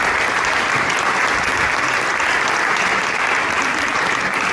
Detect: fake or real real